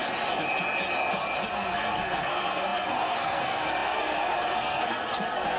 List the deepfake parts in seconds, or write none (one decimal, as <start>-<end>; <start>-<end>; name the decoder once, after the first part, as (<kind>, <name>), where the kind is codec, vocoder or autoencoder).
1.5-5.6 (codec, SNAC)